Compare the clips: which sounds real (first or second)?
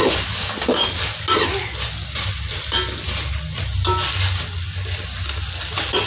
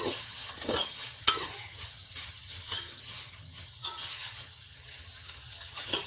first